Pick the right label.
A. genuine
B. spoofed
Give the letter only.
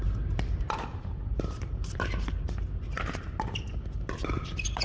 A